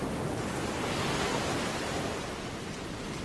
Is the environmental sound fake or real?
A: real